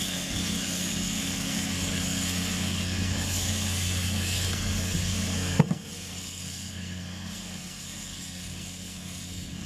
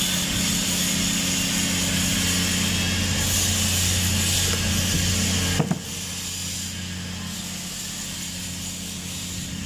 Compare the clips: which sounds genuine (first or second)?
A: second